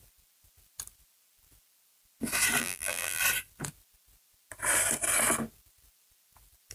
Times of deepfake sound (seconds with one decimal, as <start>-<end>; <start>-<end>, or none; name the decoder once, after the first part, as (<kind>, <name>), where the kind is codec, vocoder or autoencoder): 2.6-3.2 (vocoder, BigVGAN v2)